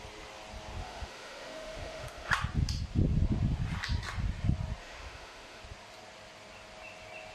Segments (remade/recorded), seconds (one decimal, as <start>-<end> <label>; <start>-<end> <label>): 0.0-0.8 recorded; 0.8-2.3 remade; 2.3-4.8 recorded; 4.8-5.6 remade; 5.6-7.3 recorded